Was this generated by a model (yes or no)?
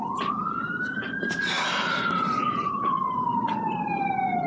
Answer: yes